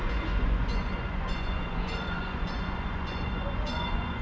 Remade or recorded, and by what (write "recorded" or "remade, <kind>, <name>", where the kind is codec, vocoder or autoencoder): remade, vocoder, Vocos